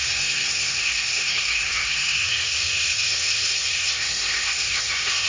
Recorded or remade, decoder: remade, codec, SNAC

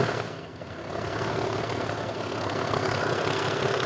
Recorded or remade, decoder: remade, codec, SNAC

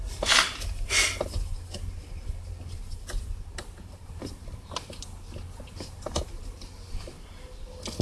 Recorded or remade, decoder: recorded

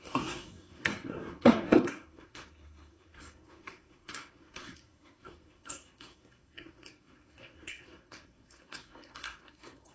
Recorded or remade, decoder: remade, codec, SNAC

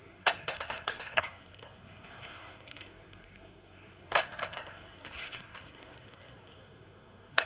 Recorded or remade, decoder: remade, codec, SNAC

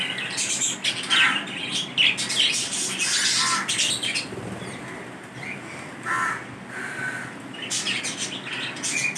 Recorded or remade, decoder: recorded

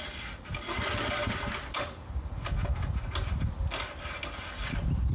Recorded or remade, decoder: recorded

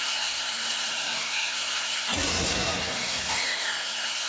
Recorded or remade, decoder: remade, codec, SNAC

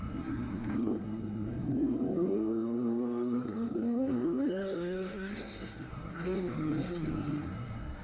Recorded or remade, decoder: remade, codec, SNAC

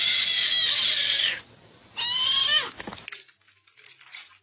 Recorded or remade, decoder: recorded